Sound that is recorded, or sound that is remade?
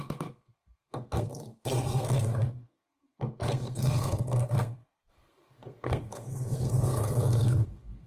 remade